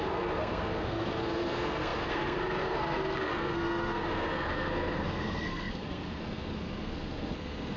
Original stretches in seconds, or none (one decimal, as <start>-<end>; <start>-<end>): none